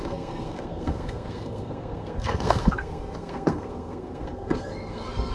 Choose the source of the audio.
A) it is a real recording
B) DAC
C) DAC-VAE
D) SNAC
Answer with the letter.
D